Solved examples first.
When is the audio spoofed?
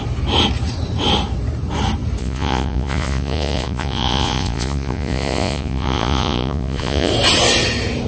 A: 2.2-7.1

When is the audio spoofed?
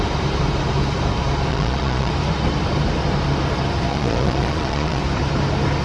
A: 1.5-2.1; 3.9-5.0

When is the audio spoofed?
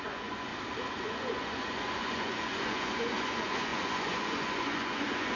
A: 0.0-0.5; 1.0-5.4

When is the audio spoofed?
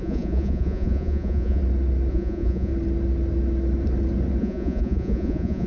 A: 0.0-1.6; 2.1-2.7; 4.4-5.7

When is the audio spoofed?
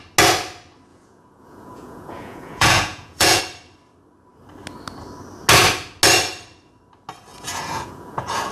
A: 0.9-3.4; 7.3-8.5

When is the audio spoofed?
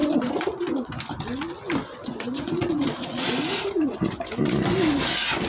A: 0.0-0.9; 1.8-3.3